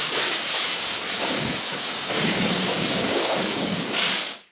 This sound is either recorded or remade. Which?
remade